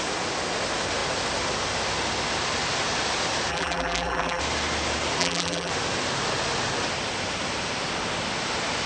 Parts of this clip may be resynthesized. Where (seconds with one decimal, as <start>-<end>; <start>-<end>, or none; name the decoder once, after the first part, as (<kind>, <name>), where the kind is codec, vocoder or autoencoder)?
3.5-4.4 (vocoder, BigVGAN v2); 5.2-5.7